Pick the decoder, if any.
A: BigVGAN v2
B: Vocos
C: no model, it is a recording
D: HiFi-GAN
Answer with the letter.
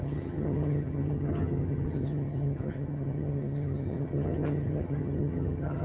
D